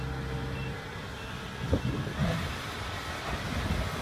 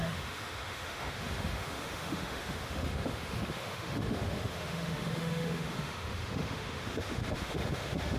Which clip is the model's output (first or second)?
second